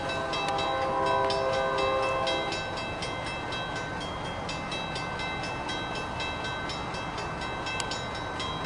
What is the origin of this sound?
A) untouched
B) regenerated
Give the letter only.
A